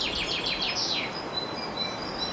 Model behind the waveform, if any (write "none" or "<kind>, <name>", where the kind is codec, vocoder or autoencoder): none